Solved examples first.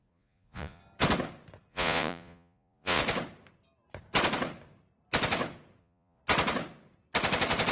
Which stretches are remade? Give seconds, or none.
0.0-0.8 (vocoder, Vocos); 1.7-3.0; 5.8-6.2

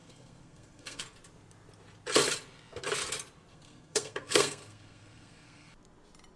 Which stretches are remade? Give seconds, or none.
0.0-1.0 (codec, SNAC); 3.5-5.7

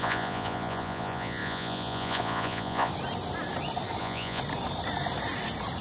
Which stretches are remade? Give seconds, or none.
0.0-2.9 (vocoder, Vocos); 4.0-4.4